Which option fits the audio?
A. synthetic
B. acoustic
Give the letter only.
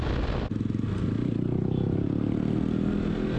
B